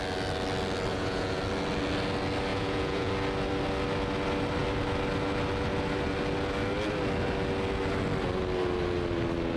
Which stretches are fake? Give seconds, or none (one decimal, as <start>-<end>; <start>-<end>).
0.9-1.4; 2.5-3.1